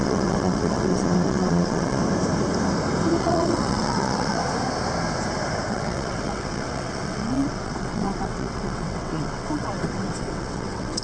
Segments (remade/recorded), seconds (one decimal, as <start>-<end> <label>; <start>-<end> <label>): 0.0-2.0 remade; 2.0-3.2 recorded; 3.2-4.4 remade; 4.4-5.7 recorded; 5.7-11.0 remade